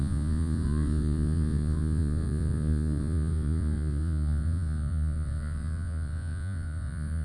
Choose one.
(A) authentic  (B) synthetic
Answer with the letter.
B